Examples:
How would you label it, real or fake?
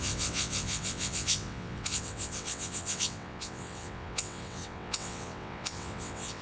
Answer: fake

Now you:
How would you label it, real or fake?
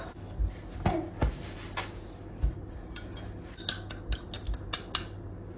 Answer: real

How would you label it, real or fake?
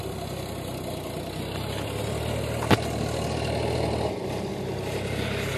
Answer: real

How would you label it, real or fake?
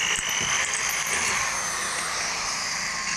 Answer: real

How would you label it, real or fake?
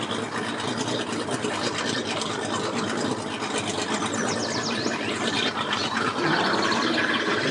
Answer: real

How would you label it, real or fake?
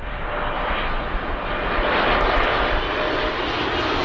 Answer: real